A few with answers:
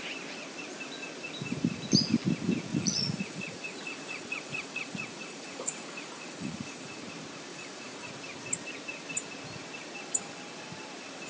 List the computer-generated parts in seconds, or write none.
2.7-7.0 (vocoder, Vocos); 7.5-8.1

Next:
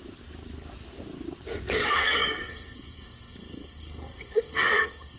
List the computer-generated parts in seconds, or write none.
2.0-5.2 (codec, SNAC)

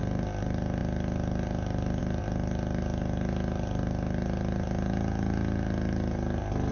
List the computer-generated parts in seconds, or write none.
none

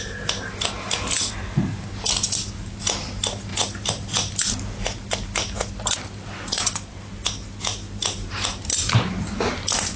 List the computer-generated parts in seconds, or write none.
none